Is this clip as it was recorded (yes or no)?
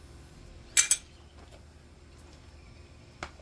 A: yes